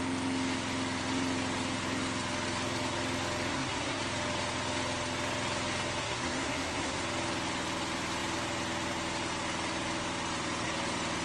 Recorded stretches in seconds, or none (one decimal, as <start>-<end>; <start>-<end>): 0.0-3.5; 4.0-6.0; 7.0-11.2